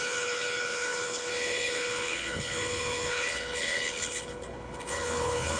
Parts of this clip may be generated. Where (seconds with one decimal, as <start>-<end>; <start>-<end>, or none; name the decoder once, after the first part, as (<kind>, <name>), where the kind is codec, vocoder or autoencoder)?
0.0-5.6 (codec, HILCodec)